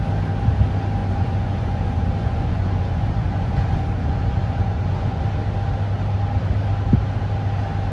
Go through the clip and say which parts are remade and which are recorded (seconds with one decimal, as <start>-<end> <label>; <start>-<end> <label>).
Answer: 0.0-1.0 recorded; 1.0-5.2 remade; 5.2-7.9 recorded